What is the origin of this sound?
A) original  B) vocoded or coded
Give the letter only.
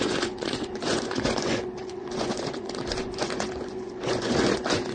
B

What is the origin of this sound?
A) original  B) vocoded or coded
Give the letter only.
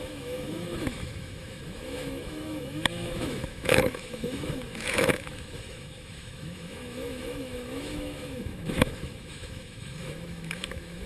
B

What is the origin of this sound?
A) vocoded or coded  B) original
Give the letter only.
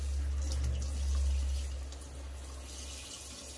B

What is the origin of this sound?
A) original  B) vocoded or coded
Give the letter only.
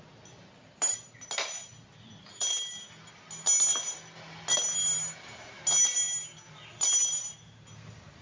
A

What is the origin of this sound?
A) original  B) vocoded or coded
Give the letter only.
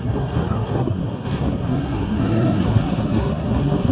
B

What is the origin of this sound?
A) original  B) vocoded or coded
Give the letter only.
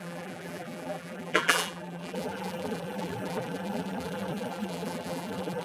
B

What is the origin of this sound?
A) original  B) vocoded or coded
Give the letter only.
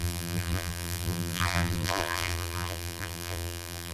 B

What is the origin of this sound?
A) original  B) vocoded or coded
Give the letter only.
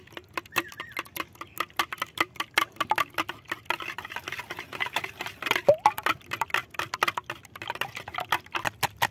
A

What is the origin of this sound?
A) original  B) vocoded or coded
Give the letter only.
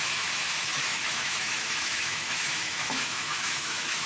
B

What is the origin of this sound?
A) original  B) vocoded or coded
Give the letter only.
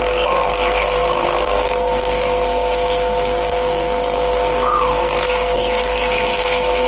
B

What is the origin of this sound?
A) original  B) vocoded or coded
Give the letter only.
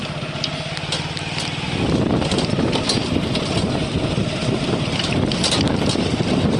A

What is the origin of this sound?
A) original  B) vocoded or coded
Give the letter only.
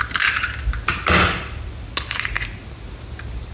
A